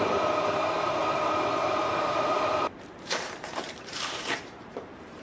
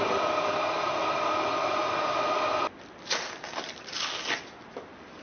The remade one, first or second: first